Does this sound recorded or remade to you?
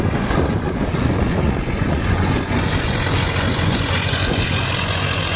remade